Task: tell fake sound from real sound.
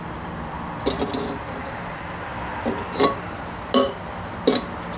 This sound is real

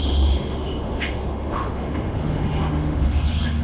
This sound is fake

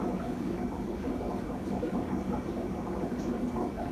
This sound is fake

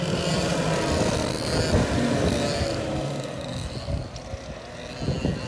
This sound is real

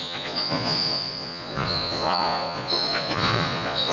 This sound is fake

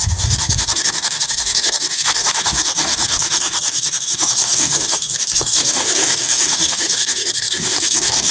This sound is fake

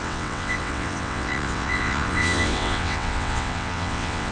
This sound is fake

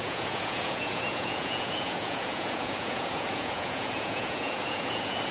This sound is fake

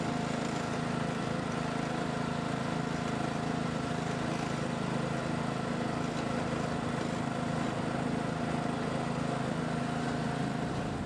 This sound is real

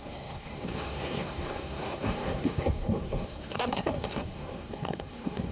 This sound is fake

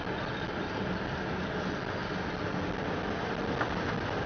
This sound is real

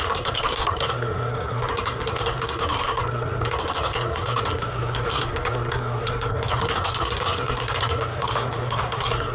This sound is fake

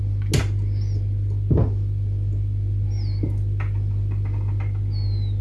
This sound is real